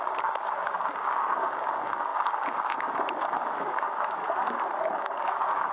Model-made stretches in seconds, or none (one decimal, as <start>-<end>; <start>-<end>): 0.0-4.2; 5.0-5.7